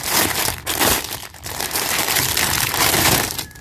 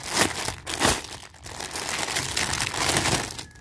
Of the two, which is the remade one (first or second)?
first